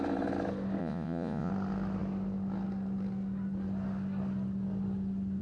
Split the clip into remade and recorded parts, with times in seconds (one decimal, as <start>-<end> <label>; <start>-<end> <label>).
0.0-0.8 recorded; 0.8-1.5 remade; 1.5-5.4 recorded